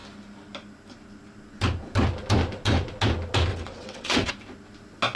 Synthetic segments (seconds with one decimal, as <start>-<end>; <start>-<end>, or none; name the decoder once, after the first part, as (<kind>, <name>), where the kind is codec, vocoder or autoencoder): 3.5-4.3 (vocoder, WaveNeXt)